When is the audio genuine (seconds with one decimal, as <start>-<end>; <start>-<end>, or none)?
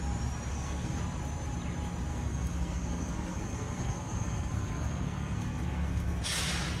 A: 0.0-0.5; 1.0-2.1; 6.2-6.8